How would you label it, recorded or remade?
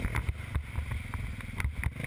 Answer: recorded